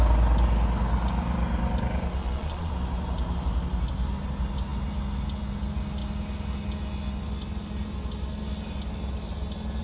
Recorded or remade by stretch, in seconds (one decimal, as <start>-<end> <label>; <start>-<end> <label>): 0.0-2.2 recorded; 2.2-2.7 remade; 2.7-9.8 recorded